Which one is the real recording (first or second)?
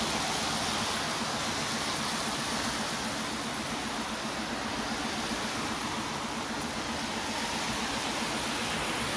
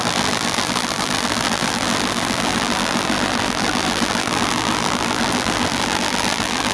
first